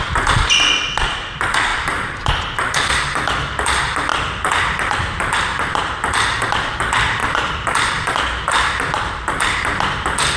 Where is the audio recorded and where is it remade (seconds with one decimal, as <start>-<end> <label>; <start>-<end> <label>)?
0.0-1.7 recorded; 1.7-2.3 remade; 2.3-7.2 recorded; 7.2-8.5 remade; 8.5-10.4 recorded